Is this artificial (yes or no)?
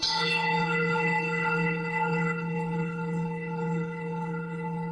yes